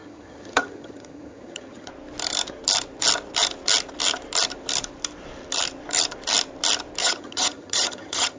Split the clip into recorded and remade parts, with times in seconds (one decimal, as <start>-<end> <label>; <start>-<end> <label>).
0.0-1.9 remade; 1.9-7.0 recorded; 7.0-8.4 remade